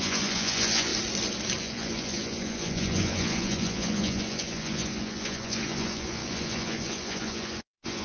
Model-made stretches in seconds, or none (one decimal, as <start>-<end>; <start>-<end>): 0.0-0.9; 1.6-8.0

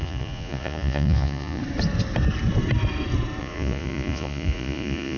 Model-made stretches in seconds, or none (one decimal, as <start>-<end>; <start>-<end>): 0.0-1.6; 3.4-5.2

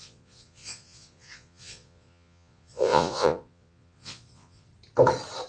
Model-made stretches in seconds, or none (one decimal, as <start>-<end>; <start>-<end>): 0.0-4.7

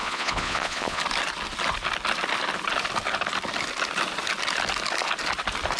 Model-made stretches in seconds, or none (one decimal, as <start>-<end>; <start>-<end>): 0.0-1.0

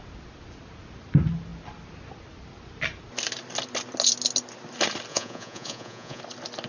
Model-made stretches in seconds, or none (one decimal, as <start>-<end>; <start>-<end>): 5.1-6.2

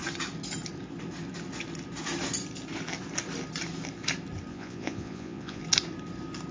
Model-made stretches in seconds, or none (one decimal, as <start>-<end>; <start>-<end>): 4.5-5.6

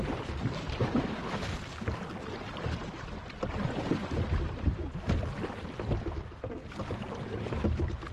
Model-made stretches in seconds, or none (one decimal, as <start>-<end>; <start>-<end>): none

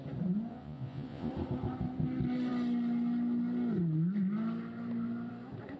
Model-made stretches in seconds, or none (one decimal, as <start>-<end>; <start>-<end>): 0.5-1.3